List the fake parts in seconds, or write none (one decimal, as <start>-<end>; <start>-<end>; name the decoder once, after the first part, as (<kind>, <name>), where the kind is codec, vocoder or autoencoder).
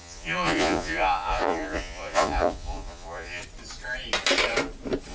0.0-3.4 (vocoder, Vocos)